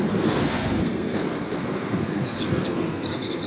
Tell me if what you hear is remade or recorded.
remade